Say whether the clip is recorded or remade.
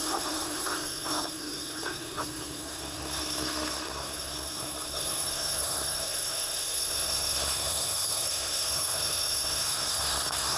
remade